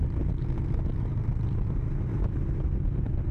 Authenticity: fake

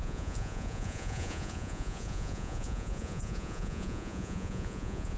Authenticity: fake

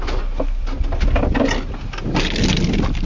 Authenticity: real